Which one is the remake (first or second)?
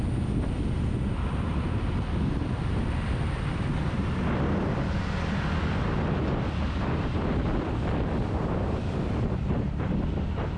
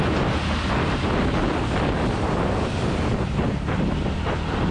first